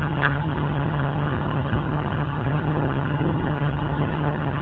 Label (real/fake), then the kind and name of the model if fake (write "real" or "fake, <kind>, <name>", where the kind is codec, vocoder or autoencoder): fake, vocoder, HiFi-GAN